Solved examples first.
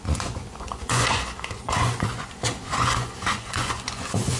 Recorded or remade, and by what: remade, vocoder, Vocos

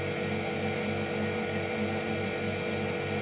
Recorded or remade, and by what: recorded